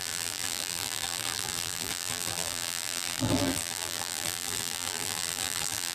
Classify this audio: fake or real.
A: fake